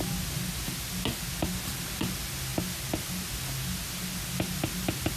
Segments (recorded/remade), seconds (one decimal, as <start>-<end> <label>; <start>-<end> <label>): 0.0-5.2 recorded